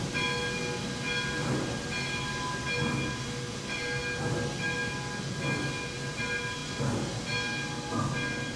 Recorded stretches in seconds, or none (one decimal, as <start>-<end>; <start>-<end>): 0.0-8.6